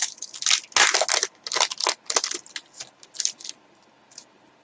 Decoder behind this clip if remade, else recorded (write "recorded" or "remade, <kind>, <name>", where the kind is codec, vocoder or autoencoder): recorded